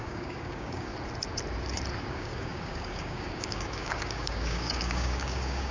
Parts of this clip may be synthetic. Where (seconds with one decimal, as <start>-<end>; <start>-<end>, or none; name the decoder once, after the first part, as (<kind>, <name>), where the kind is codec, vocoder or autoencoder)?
0.0-0.9 (codec, DAC); 2.1-5.7